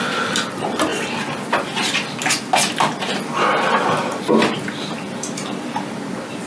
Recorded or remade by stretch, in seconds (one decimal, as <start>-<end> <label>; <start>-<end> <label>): 0.0-0.9 remade; 0.9-4.7 recorded; 4.7-6.5 remade